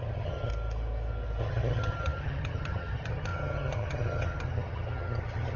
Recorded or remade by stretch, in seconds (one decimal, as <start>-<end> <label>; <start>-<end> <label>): 0.0-0.5 remade; 0.5-1.4 recorded; 1.4-5.6 remade